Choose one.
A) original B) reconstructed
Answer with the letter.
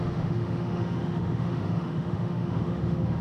B